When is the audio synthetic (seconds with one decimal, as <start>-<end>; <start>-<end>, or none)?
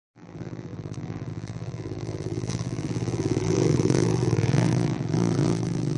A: 0.0-6.0